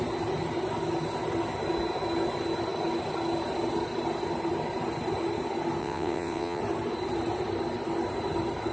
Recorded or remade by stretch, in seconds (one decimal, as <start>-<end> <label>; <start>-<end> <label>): 0.0-5.8 recorded; 5.8-6.6 remade; 6.6-8.7 recorded